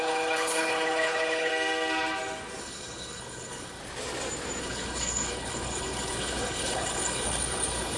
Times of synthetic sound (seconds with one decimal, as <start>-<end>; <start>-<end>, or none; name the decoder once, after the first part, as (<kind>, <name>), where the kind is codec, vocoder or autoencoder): 0.0-1.5 (codec, HILCodec); 2.6-3.8; 4.6-8.0